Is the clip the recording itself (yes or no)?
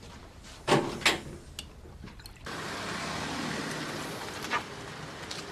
yes